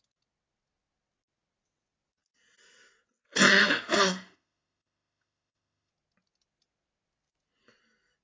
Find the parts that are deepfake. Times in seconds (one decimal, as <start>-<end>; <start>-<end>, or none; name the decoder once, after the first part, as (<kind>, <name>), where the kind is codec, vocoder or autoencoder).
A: 3.6-5.9 (autoencoder, DAC-VAE)